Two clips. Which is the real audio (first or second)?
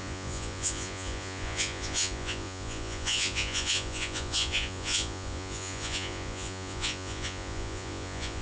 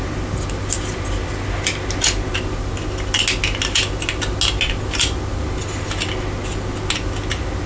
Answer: second